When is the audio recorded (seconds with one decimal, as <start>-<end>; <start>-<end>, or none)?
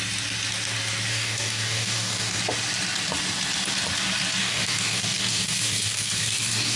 0.0-1.1; 2.4-4.4